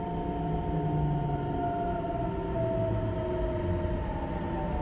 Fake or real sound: real